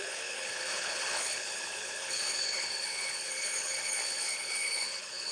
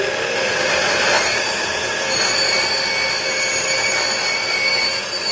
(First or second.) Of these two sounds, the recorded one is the second